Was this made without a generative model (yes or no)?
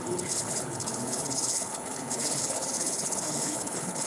no